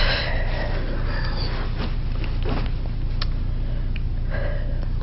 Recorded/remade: recorded